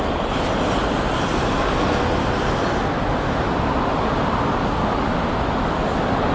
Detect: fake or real real